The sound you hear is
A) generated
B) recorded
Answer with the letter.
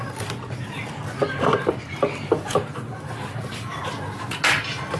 B